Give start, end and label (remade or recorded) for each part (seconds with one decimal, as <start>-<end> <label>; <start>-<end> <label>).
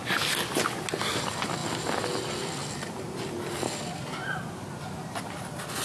0.0-5.8 recorded